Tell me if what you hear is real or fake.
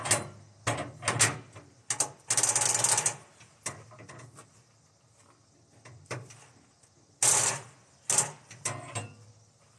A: real